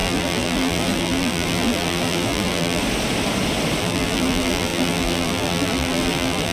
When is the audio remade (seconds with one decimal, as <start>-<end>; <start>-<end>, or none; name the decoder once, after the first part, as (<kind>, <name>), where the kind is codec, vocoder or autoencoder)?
0.0-2.8 (vocoder, BigVGAN v2); 3.8-6.5